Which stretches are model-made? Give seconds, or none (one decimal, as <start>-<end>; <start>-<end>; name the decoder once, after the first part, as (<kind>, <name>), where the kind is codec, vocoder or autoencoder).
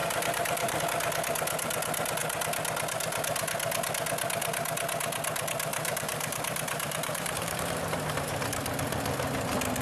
0.0-0.8 (vocoder, BigVGAN v2); 5.7-8.4